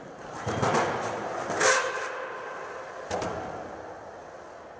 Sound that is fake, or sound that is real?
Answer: real